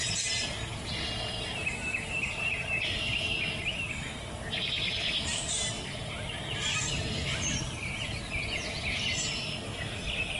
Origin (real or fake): fake